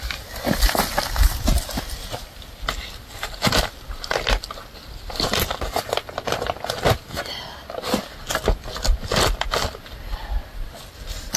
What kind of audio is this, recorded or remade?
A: recorded